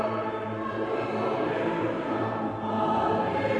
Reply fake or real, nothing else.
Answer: fake